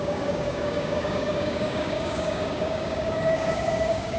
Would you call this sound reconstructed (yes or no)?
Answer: yes